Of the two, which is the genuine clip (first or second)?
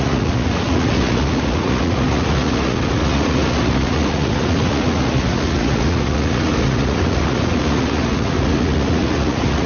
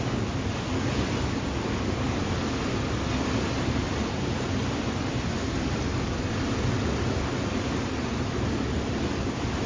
second